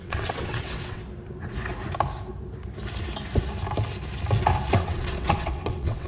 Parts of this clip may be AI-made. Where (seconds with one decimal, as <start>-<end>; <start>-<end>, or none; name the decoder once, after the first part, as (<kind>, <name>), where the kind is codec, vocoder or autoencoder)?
0.0-1.0 (vocoder, WaveNeXt); 4.7-6.1